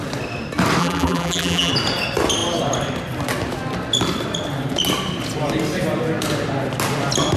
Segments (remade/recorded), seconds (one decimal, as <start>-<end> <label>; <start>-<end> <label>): 0.0-0.8 recorded; 0.8-1.7 remade; 1.7-7.4 recorded